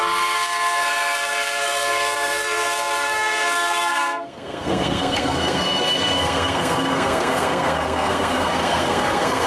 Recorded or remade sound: remade